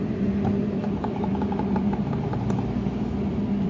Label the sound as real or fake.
fake